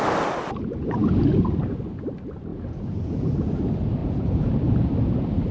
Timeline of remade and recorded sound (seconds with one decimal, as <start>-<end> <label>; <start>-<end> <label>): 0.0-2.5 recorded; 2.5-3.6 remade; 3.6-4.0 recorded; 4.0-4.5 remade; 4.5-5.5 recorded